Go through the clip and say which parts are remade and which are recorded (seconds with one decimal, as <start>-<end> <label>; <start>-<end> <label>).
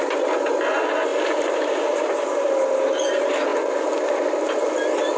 0.0-5.2 recorded